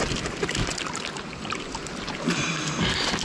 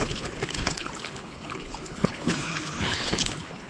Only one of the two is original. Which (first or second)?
first